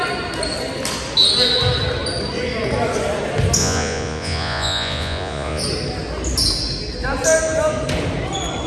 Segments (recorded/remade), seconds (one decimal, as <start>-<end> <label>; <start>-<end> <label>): 0.0-3.6 recorded; 3.6-5.6 remade; 5.6-8.7 recorded